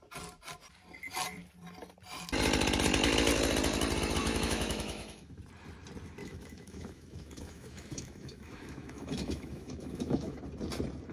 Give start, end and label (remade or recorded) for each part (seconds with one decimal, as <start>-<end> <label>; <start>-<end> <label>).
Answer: 0.0-4.2 recorded; 4.2-5.4 remade; 5.4-6.2 recorded; 6.2-10.4 remade; 10.4-11.1 recorded